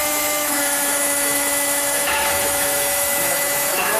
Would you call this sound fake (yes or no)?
yes